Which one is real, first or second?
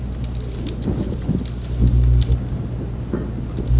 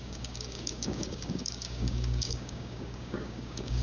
first